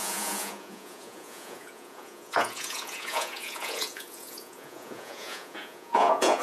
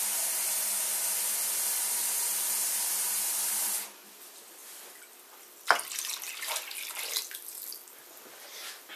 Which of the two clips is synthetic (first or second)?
first